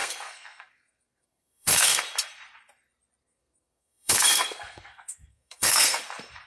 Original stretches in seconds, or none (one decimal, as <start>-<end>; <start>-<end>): 2.0-3.2; 6.0-6.5